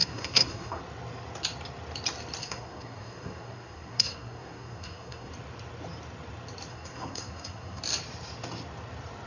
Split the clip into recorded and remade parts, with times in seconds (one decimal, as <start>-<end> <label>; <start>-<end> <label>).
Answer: 0.0-0.8 remade; 0.8-2.4 recorded; 2.4-5.3 remade; 5.3-6.7 recorded; 6.7-7.8 remade; 7.8-9.3 recorded